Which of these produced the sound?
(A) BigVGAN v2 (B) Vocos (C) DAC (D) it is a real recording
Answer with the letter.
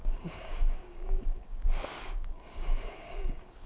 C